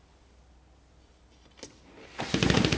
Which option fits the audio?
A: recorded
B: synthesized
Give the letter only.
A